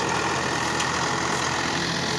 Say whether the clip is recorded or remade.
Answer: recorded